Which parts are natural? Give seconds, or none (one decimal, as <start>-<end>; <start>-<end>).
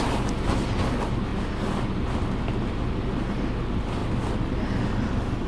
0.0-4.0; 5.1-5.5